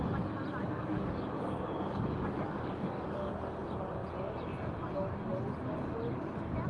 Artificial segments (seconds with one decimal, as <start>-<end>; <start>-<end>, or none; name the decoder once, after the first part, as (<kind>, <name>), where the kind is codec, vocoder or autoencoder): 0.6-3.3 (codec, DAC)